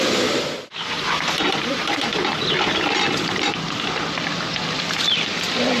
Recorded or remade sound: remade